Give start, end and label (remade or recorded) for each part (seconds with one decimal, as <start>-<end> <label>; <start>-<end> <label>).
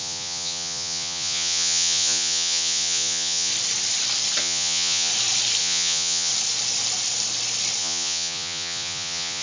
0.0-3.5 remade; 3.5-4.4 recorded; 4.4-5.1 remade; 5.1-5.6 recorded; 5.6-6.3 remade; 6.3-7.8 recorded; 7.8-9.4 remade